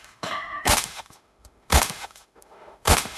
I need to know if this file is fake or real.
fake